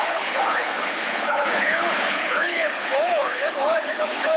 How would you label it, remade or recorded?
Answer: remade